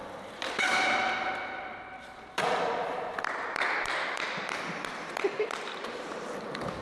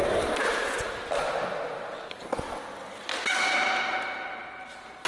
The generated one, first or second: first